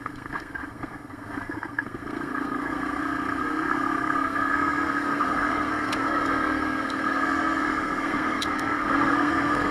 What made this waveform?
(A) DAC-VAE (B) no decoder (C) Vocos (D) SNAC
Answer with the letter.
D